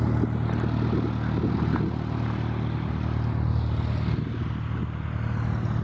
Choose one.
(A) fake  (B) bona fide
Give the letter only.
B